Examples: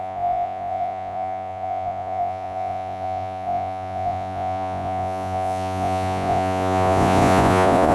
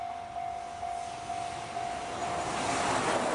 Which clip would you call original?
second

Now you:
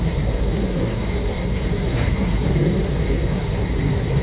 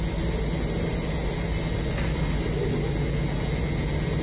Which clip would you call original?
second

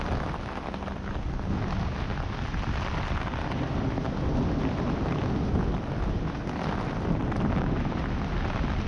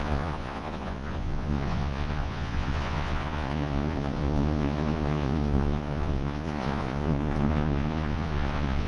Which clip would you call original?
first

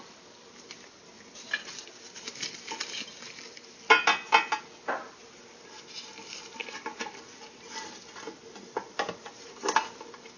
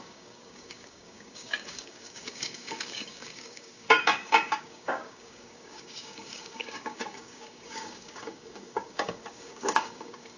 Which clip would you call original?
first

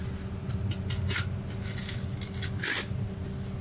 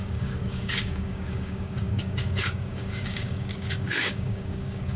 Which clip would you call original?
first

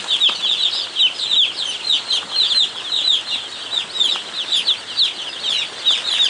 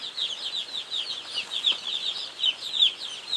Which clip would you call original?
first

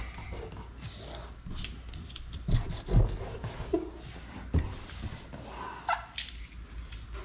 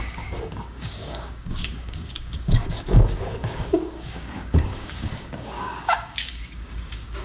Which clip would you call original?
first